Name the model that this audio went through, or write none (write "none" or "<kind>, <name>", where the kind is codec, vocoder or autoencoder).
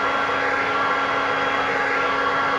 none